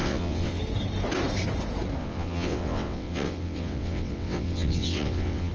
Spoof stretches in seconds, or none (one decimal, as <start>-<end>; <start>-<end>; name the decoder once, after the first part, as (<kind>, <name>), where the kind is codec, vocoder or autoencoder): 0.0-0.6 (vocoder, WaveNeXt); 2.0-5.5